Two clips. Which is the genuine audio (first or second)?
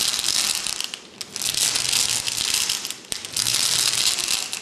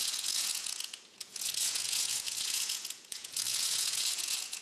first